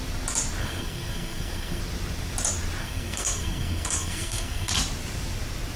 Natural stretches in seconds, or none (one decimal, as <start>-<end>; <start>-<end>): 0.0-0.6; 1.8-2.8; 4.7-5.8